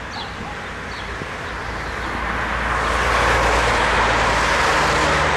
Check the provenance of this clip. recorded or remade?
recorded